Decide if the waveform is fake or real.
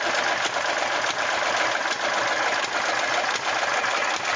real